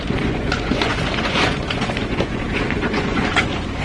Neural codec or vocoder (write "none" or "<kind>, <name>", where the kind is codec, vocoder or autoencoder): vocoder, Vocos